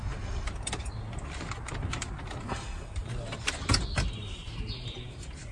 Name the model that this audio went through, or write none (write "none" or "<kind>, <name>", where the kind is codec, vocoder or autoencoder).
none